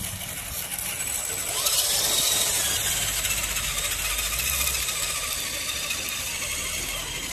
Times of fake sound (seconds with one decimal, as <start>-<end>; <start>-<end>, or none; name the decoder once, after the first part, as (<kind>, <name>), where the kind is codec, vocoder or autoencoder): none